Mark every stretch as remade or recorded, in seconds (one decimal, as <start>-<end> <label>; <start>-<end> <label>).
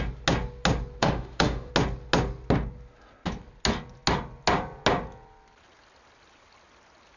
0.0-1.0 recorded; 1.0-1.7 remade; 1.7-7.2 recorded